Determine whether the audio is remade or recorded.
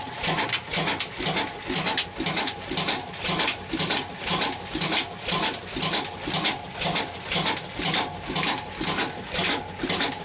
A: recorded